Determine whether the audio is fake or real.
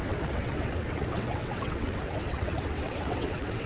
fake